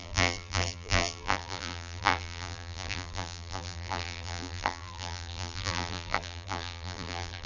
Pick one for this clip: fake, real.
fake